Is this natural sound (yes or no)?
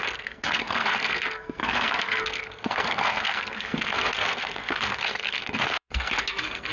no